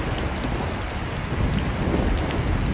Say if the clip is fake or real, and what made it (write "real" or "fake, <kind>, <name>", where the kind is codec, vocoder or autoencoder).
real